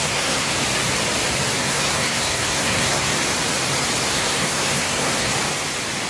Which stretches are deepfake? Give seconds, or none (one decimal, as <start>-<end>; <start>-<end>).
0.0-0.5; 1.6-3.1; 4.1-5.3